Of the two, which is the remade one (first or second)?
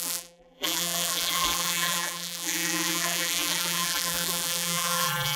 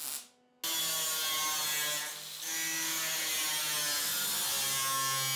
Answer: first